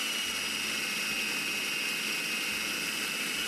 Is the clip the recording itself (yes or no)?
yes